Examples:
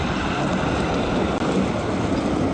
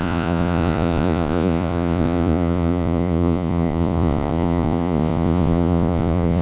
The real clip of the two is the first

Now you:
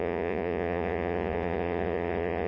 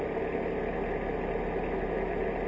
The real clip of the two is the second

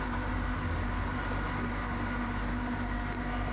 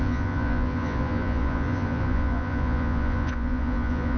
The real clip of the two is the first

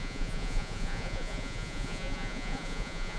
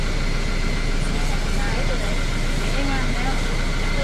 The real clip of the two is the second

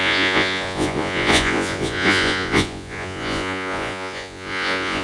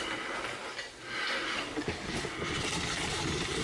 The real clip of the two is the second